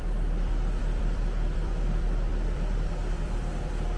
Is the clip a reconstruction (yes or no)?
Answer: yes